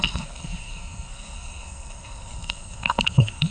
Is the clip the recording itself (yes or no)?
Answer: no